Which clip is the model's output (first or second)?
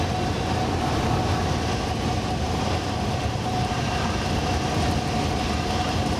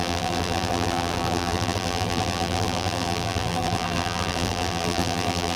second